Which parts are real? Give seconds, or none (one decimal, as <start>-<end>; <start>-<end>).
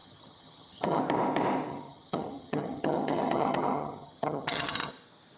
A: 1.0-1.7; 4.9-5.4